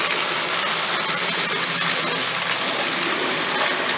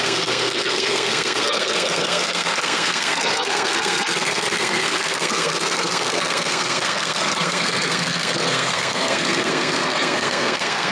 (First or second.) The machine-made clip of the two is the second